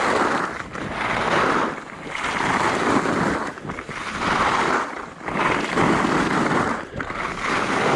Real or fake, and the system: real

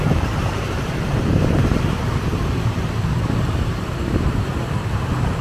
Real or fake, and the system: fake, vocoder, BigVGAN v2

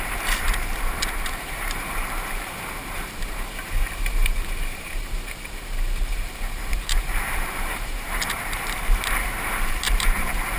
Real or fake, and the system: fake, vocoder, BigVGAN v2